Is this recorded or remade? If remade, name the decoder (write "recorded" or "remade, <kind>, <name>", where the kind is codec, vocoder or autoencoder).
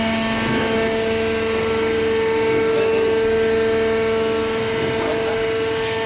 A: recorded